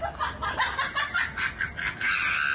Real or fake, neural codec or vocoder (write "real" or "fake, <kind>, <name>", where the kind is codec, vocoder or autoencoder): real